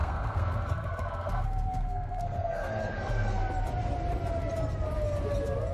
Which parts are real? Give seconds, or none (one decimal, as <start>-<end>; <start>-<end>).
3.4-5.7